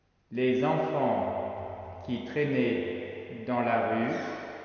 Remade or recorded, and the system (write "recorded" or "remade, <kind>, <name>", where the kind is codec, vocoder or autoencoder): recorded